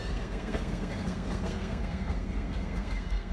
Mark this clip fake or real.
fake